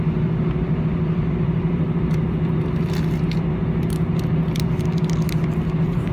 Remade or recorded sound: recorded